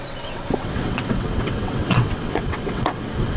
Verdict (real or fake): fake